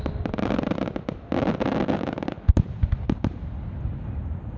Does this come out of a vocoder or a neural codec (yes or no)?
yes